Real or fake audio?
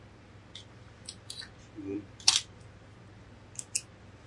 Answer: real